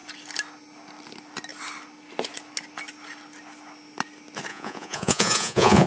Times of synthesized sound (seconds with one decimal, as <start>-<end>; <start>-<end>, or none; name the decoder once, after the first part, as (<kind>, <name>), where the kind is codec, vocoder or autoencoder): 4.5-5.9 (vocoder, Vocos)